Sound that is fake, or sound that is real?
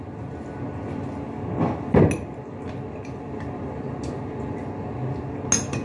real